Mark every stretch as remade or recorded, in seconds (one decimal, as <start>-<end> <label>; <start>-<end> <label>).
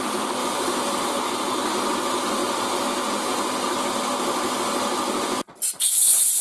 0.0-0.4 recorded; 0.4-1.2 remade; 1.2-6.4 recorded